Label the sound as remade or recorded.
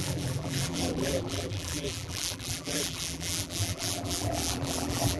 remade